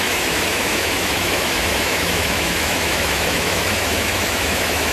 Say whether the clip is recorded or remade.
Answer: remade